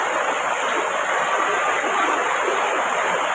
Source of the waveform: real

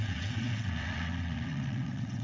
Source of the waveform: fake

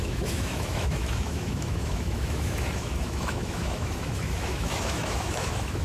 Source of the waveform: fake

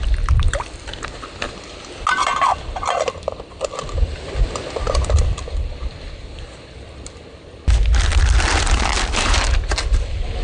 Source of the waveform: real